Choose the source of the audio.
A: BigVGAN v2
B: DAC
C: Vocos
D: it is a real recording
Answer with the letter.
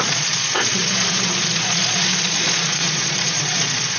C